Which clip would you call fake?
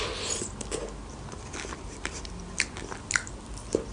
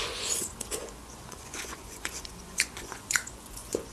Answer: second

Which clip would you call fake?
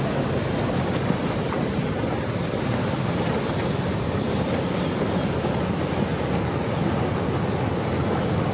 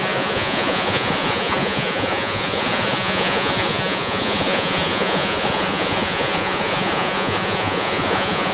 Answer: second